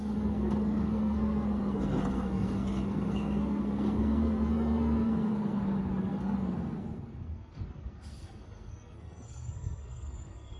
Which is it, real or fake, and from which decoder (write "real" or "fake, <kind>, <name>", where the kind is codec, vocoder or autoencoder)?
fake, codec, SNAC